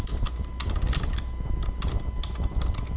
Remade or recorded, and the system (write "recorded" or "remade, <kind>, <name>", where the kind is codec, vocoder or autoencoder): recorded